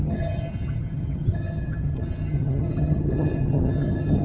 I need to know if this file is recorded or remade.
remade